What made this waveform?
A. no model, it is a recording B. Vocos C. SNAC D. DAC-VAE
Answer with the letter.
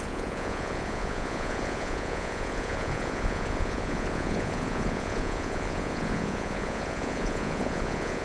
B